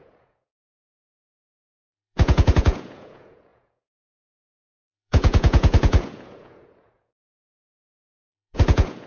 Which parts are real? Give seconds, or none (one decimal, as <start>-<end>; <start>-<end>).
none